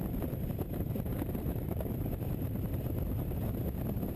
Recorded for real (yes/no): no